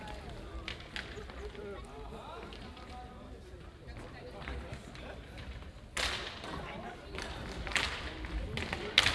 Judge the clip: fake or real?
real